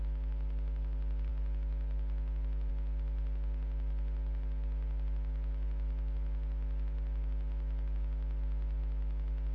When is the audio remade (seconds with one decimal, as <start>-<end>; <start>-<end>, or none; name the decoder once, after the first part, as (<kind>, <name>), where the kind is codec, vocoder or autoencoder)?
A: none